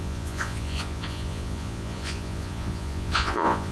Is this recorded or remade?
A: remade